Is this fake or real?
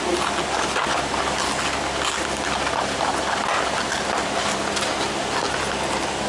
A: real